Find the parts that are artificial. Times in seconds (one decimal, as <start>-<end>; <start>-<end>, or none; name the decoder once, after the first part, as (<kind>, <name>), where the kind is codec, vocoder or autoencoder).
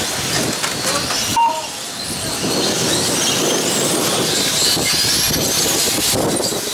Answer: none